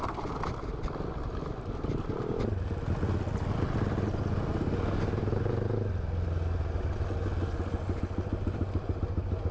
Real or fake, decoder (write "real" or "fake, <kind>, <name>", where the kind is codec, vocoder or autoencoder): real